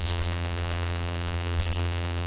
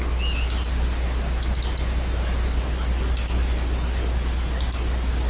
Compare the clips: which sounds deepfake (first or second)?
first